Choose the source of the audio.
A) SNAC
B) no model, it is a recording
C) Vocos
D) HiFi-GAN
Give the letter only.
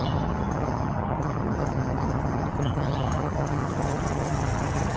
D